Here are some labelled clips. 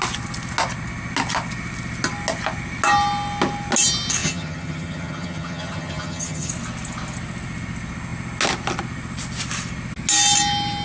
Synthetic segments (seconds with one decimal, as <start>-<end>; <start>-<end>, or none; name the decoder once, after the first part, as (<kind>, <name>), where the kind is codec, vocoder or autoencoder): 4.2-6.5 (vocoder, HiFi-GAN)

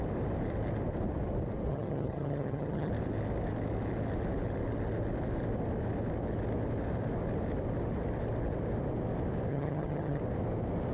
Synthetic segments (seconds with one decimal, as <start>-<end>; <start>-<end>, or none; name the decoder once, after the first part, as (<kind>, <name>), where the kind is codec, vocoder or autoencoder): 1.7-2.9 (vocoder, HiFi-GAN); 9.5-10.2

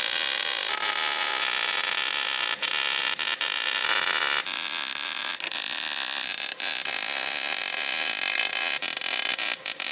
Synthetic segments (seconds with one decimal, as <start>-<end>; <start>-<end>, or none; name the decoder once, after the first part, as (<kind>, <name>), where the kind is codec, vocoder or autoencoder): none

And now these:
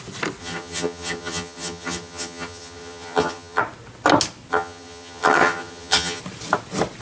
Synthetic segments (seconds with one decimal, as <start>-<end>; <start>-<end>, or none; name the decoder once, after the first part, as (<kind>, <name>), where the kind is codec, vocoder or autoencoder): 0.4-3.6 (vocoder, HiFi-GAN); 4.5-6.2